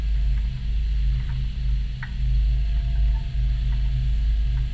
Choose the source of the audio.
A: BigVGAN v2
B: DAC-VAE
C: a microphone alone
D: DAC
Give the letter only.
C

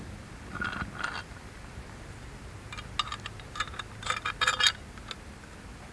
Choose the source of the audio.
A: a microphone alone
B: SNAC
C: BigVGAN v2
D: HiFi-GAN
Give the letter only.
A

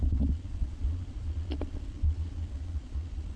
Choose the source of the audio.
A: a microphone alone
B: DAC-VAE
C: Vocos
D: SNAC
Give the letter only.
C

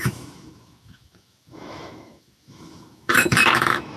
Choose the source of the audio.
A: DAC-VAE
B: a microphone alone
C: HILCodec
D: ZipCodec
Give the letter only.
A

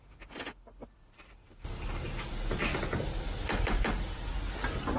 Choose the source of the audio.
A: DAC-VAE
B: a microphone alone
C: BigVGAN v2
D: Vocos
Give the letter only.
B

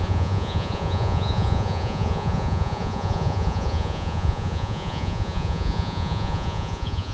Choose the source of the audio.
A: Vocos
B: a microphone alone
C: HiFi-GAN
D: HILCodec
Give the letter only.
A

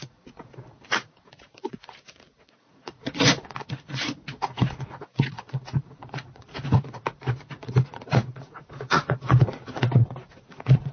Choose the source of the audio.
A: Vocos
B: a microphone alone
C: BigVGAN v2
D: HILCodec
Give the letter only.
A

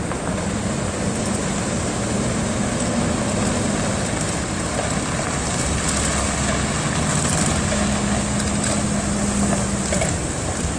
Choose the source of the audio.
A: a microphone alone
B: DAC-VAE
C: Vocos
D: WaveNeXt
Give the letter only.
A